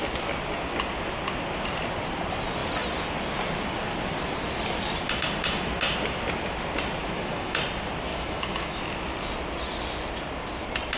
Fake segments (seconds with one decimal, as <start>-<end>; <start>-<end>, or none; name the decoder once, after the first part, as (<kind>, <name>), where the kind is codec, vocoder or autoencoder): 7.0-7.6 (autoencoder, DAC-VAE); 8.1-8.8

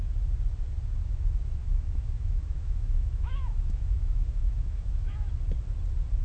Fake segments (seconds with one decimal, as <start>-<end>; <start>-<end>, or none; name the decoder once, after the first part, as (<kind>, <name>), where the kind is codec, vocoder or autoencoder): 1.6-5.3 (autoencoder, DAC-VAE)

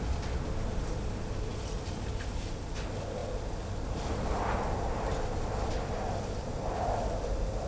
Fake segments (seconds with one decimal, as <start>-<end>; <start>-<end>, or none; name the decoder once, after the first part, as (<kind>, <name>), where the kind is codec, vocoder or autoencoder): none

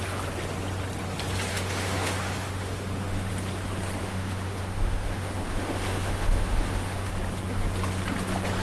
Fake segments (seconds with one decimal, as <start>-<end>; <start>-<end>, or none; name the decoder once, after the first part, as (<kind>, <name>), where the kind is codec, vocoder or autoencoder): 1.5-3.3 (autoencoder, DAC-VAE); 4.0-7.1

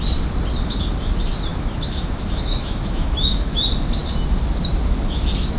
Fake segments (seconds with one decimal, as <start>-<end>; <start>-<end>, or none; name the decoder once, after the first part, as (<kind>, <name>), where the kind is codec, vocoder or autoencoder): 1.5-3.6 (autoencoder, DAC-VAE)